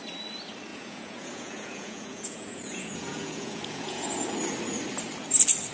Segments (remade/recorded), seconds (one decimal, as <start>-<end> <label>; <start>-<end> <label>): 0.0-0.7 recorded; 0.7-4.1 remade; 4.1-5.7 recorded